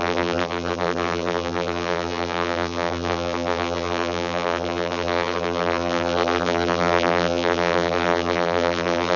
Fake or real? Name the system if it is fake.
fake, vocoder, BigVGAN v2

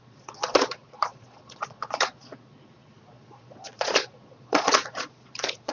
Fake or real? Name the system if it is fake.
fake, vocoder, Vocos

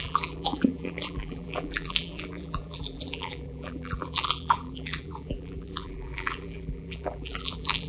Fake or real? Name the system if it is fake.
fake, vocoder, BigVGAN v2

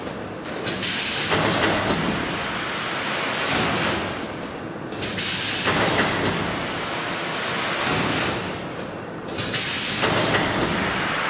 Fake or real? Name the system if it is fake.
real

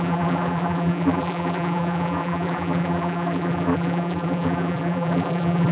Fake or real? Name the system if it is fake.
fake, vocoder, BigVGAN v2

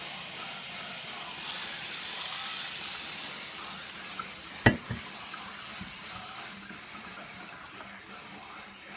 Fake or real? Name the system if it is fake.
real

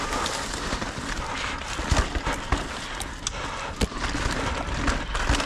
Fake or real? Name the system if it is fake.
real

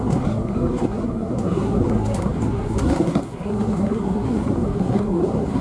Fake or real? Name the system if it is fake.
fake, codec, SNAC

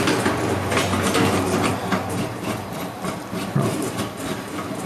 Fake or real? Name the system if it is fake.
real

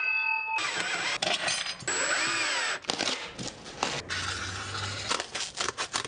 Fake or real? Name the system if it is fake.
real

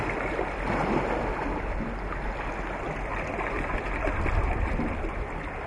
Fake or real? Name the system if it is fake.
real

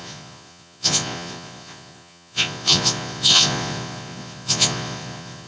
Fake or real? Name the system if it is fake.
fake, vocoder, Vocos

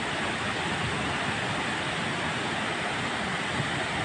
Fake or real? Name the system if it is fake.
real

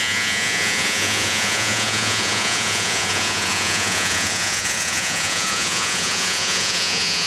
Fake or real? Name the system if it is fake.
fake, vocoder, Vocos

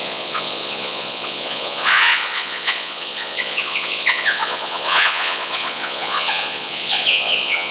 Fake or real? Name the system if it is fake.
fake, vocoder, Vocos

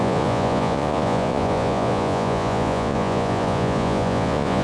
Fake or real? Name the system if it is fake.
fake, vocoder, Vocos